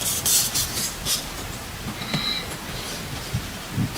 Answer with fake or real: real